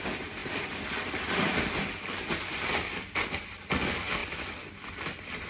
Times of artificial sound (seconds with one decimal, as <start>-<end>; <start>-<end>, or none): none